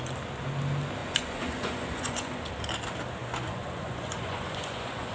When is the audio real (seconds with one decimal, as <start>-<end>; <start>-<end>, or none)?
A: 0.0-1.0; 2.5-3.2